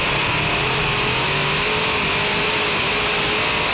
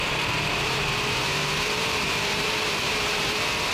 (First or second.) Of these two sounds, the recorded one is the first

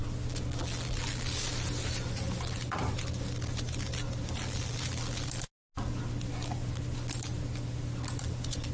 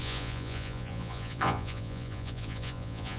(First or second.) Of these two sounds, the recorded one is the first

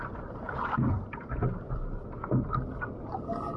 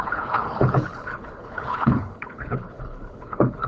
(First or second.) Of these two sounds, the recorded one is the first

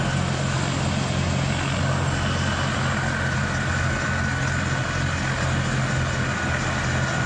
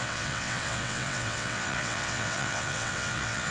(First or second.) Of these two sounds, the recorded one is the first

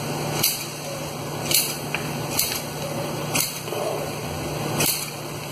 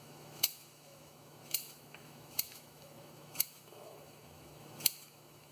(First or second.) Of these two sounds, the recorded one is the first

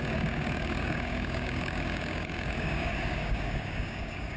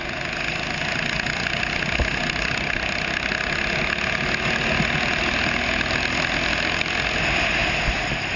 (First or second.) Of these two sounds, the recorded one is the second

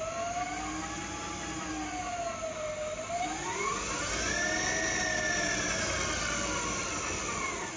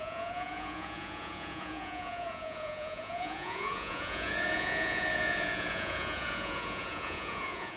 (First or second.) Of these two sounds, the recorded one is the first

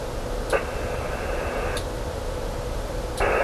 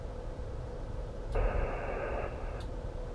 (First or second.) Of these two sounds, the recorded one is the first